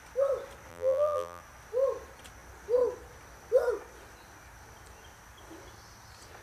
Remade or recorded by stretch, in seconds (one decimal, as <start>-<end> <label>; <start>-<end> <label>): 0.0-0.7 recorded; 0.7-1.4 remade; 1.4-6.4 recorded